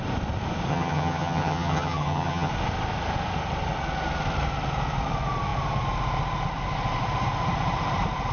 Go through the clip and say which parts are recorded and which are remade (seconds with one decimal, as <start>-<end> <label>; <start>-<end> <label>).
0.0-0.7 recorded; 0.7-2.5 remade; 2.5-8.3 recorded